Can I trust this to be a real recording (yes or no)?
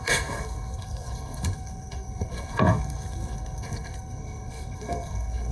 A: no